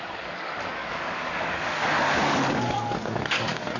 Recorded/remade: remade